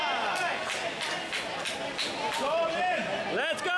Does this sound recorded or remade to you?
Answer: recorded